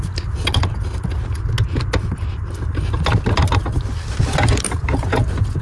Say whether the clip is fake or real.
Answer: real